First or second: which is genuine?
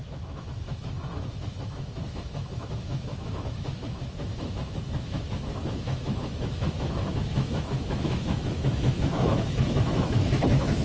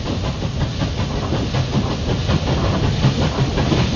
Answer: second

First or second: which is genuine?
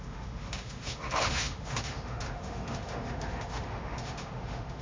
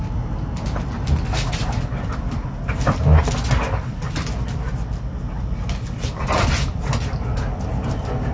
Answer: second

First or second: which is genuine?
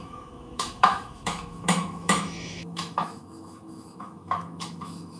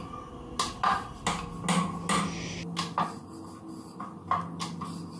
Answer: second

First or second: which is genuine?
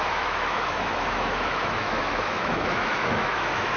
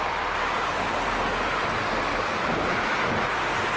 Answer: second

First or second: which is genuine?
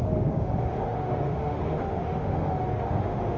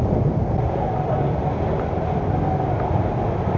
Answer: second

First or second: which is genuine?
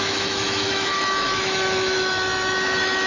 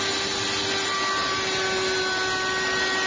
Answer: second